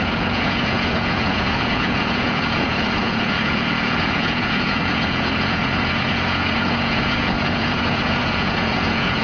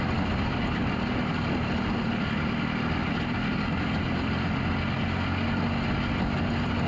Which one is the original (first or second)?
second